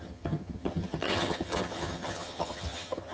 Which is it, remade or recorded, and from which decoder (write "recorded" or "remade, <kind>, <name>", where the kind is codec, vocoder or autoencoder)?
remade, vocoder, HiFi-GAN